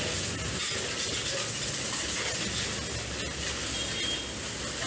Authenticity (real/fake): real